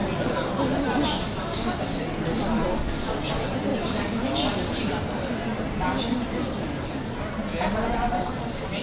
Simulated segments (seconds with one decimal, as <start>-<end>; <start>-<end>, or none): none